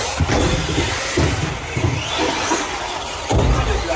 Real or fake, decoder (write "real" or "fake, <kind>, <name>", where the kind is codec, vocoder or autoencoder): real